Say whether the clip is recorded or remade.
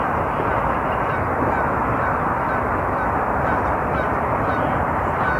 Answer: recorded